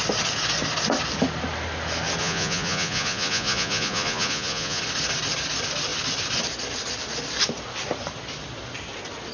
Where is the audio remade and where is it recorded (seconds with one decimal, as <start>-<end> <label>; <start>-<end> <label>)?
0.0-2.2 recorded; 2.2-4.8 remade; 4.8-9.3 recorded

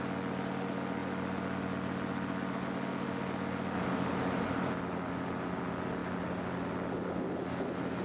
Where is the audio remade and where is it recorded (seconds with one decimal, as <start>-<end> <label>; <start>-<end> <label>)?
0.0-8.0 recorded

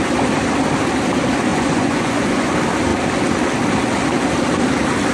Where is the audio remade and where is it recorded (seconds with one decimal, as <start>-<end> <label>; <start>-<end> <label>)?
0.0-1.5 recorded; 1.5-2.5 remade; 2.5-5.1 recorded

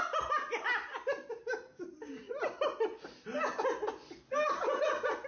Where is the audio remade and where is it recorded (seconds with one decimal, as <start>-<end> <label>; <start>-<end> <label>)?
0.0-5.3 recorded

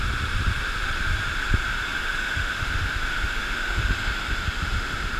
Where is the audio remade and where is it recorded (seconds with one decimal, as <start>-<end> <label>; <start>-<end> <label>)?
0.0-1.9 recorded; 1.9-5.2 remade

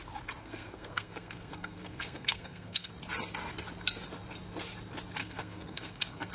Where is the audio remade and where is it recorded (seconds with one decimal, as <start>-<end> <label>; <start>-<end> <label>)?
0.0-0.4 recorded; 0.4-2.9 remade; 2.9-5.2 recorded; 5.2-6.3 remade